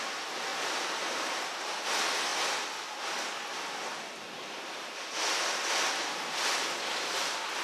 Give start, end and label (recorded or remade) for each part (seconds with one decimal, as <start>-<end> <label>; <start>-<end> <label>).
0.0-7.6 recorded